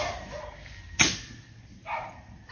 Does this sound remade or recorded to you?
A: recorded